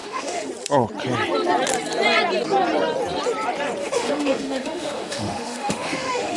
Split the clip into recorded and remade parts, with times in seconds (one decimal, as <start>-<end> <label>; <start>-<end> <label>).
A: 0.0-0.5 remade; 0.5-3.8 recorded; 3.8-6.4 remade